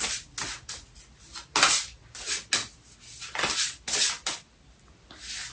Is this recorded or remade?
recorded